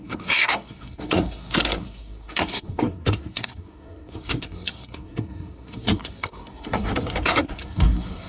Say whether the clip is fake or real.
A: fake